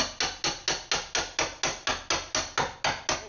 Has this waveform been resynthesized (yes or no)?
no